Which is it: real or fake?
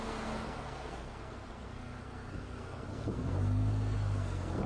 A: fake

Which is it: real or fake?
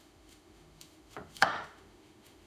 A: fake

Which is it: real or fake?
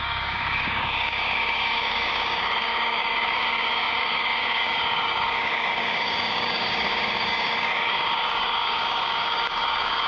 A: fake